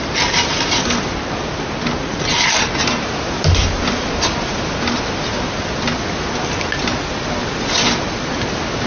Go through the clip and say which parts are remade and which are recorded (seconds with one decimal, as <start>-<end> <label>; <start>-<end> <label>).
0.0-8.9 recorded